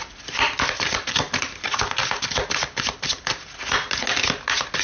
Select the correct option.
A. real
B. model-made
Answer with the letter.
A